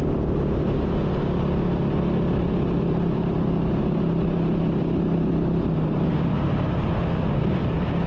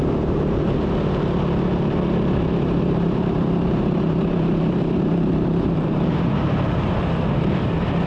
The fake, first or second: second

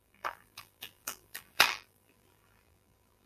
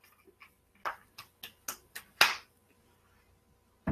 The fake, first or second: first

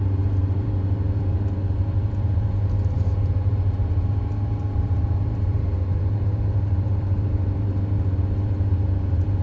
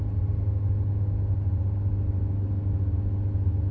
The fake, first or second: first